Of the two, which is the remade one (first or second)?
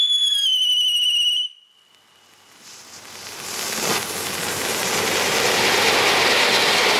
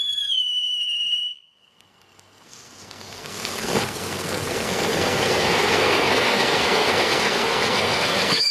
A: second